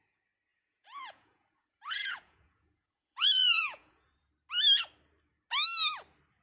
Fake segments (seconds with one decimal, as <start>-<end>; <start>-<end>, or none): 0.5-4.3